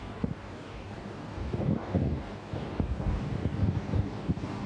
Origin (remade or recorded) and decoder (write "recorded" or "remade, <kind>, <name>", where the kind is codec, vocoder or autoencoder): remade, codec, DAC